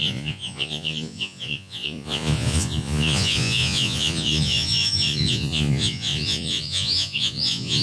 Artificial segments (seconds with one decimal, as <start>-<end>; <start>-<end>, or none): 0.0-7.8